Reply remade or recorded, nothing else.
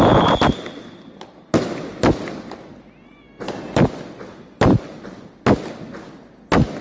recorded